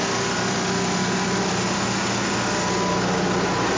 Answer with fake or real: real